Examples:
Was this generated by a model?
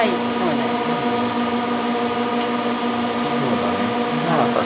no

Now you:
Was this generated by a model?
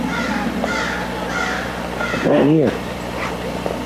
no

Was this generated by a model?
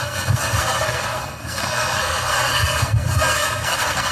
yes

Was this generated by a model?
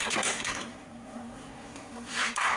yes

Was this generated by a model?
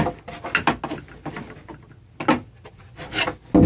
no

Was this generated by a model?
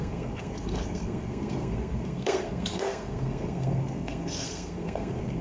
yes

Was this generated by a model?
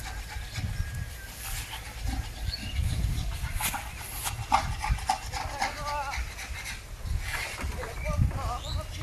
no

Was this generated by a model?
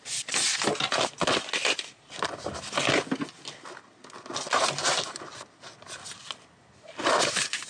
no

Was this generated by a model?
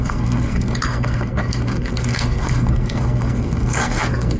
yes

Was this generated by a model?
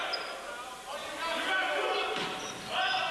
no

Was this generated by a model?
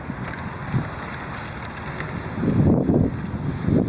no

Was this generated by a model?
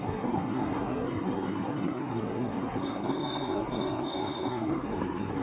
yes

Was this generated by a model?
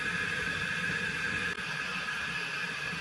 no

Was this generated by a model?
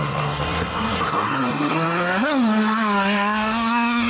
yes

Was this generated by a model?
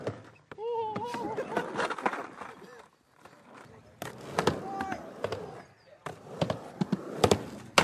no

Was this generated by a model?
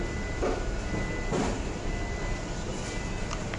no